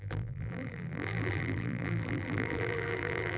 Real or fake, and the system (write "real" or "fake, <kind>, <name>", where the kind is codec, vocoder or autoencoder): fake, vocoder, BigVGAN v2